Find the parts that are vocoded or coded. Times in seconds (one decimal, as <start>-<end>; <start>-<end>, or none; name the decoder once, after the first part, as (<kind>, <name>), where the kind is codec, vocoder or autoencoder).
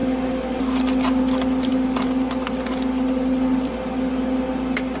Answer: none